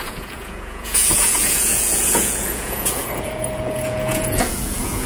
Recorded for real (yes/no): no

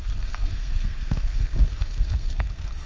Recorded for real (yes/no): no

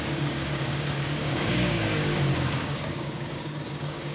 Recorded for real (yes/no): no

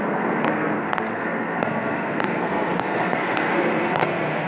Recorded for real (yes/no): no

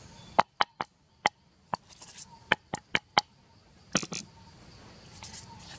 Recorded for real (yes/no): yes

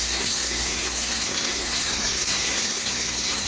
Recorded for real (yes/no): no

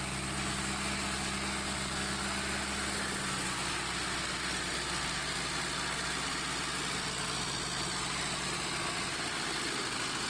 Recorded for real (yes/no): yes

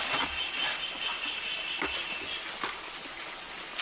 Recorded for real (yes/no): yes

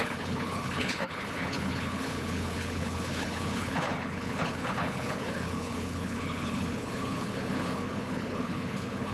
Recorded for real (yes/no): no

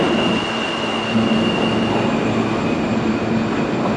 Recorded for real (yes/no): yes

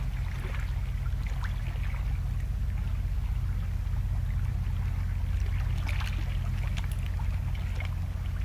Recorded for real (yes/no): yes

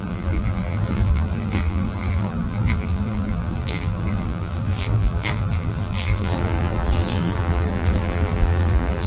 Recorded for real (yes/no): no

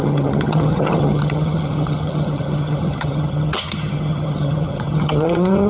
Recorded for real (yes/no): no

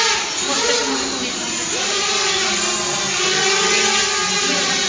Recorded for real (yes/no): yes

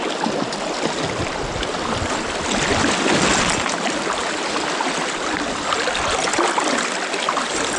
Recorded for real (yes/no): yes